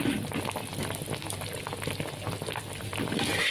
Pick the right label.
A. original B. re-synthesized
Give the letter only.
A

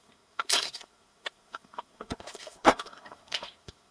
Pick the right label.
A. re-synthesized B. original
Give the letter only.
A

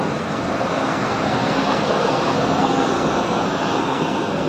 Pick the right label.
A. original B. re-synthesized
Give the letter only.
B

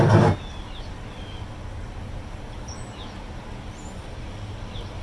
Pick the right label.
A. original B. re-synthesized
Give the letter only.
A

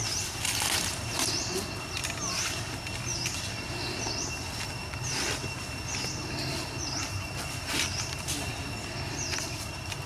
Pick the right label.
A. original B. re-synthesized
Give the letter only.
A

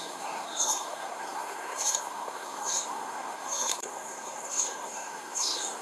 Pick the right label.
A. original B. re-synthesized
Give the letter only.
B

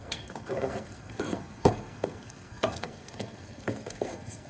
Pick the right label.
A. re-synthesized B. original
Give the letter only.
A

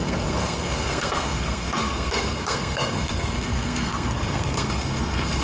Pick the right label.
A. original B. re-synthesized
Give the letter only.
B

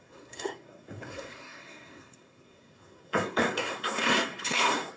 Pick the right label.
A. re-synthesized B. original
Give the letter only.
A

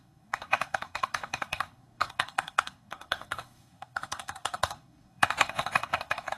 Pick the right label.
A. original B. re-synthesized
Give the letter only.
B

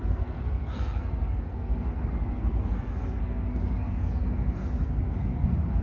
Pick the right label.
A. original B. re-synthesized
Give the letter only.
B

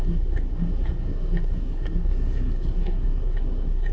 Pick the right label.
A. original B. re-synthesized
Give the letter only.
B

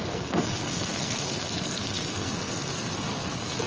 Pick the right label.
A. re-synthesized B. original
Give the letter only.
A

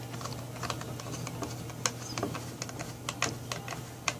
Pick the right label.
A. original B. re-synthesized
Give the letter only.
A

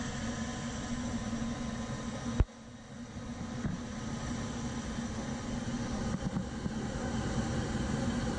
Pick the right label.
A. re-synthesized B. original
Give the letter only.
B